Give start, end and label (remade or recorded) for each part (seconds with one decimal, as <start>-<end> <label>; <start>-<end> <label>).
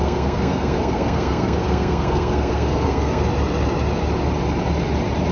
0.0-3.2 remade; 3.2-5.3 recorded